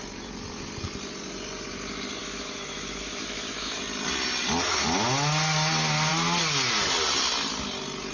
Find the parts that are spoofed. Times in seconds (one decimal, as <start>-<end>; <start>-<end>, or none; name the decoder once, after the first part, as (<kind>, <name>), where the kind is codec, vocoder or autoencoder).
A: 2.2-3.8 (autoencoder, DAC-VAE)

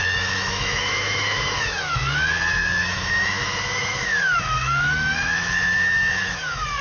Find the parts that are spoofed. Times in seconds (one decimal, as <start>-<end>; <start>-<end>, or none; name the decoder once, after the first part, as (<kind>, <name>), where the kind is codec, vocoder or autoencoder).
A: 0.0-2.0 (autoencoder, DAC-VAE); 2.6-6.8

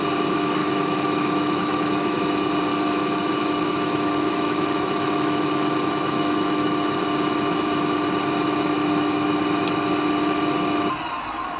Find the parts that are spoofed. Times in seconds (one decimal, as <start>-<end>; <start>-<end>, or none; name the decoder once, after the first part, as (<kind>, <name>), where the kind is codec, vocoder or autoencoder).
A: 0.6-2.2 (autoencoder, DAC-VAE); 2.7-7.0